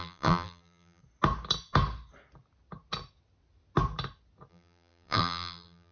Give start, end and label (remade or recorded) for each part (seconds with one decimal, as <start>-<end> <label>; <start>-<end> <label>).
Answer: 0.0-1.0 remade; 1.0-4.5 recorded; 4.5-5.9 remade